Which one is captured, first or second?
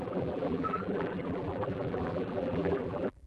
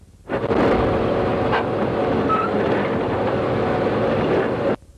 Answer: second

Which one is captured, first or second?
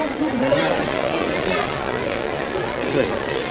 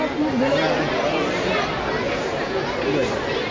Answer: second